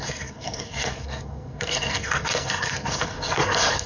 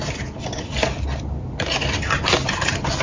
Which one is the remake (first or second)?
first